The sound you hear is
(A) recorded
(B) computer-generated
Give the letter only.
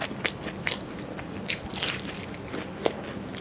A